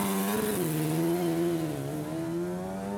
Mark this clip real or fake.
real